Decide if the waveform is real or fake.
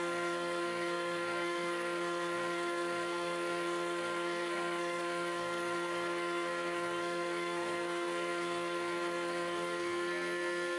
fake